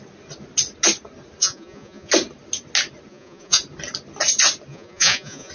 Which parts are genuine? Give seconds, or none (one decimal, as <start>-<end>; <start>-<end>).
0.0-1.4; 2.1-3.1; 3.6-4.7